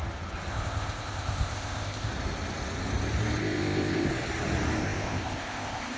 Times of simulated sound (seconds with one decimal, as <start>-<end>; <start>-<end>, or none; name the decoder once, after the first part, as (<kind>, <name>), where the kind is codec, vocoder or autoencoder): 0.5-2.1 (codec, ZipCodec); 3.4-4.1; 4.8-6.0